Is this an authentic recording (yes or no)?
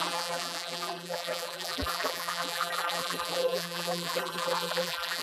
no